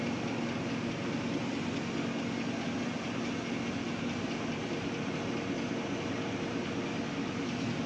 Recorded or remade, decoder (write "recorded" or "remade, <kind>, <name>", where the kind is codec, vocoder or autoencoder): recorded